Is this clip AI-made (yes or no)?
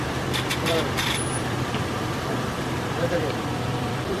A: yes